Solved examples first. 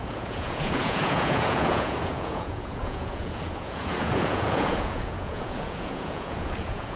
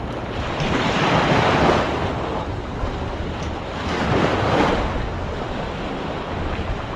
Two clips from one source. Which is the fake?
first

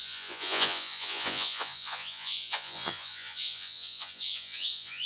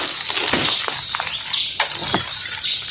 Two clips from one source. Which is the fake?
first